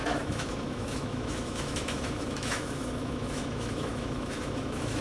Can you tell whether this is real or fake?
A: fake